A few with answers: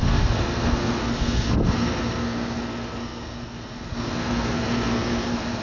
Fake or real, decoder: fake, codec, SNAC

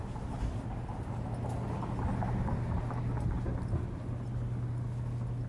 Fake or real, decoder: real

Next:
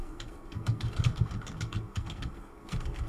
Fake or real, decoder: fake, codec, SNAC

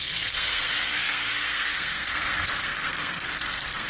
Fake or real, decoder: fake, codec, SNAC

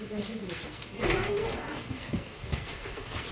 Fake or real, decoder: fake, codec, SNAC